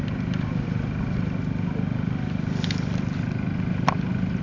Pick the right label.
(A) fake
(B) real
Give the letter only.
B